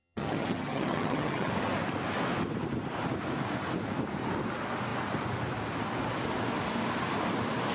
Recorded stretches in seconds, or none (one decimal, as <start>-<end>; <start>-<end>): 1.5-7.7